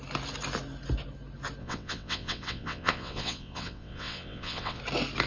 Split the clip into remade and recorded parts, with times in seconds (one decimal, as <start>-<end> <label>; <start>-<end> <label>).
0.0-1.6 recorded; 1.6-4.8 remade; 4.8-5.3 recorded

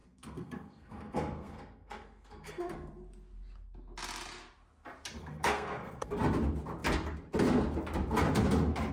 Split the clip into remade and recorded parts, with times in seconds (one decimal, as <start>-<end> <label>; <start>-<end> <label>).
0.0-2.9 remade; 2.9-5.2 recorded; 5.2-6.2 remade; 6.2-8.9 recorded